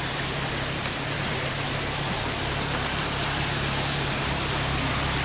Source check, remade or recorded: remade